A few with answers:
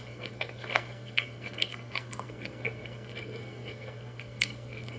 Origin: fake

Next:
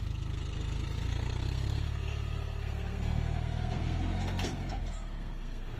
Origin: fake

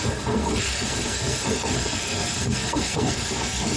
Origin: fake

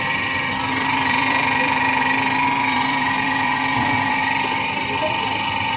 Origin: fake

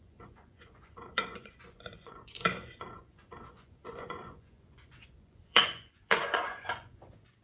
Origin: fake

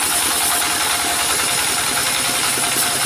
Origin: real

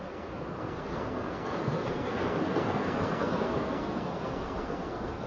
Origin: fake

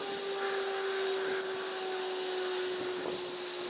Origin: real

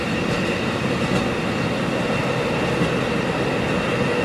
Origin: real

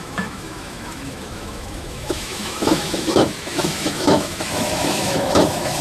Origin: fake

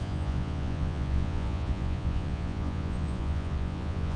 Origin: fake